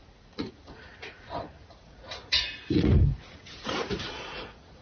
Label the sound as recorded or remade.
remade